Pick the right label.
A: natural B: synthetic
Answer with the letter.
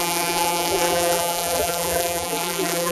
B